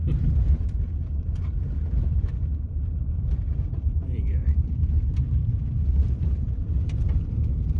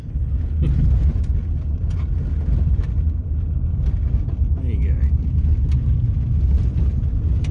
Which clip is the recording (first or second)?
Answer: second